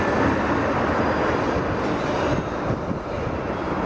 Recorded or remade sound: recorded